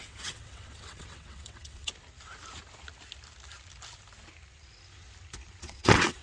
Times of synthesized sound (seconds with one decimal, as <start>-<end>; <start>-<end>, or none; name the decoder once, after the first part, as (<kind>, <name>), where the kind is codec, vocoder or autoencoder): 0.0-1.9 (vocoder, WaveNeXt); 5.6-6.2